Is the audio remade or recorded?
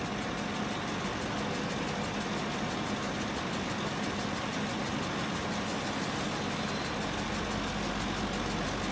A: recorded